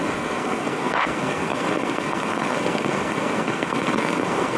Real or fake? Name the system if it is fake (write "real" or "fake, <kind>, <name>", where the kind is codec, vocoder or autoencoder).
fake, codec, SNAC